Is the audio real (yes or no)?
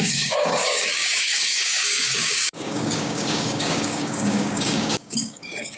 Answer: no